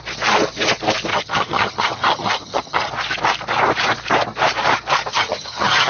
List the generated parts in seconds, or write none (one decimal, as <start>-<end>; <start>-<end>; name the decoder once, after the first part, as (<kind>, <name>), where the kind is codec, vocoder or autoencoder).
1.1-2.9 (vocoder, HiFi-GAN); 5.1-5.9